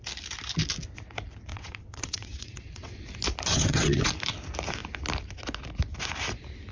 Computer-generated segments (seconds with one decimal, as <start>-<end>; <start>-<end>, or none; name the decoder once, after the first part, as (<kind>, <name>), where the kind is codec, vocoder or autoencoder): 1.5-3.1 (vocoder, WaveNeXt); 3.5-4.1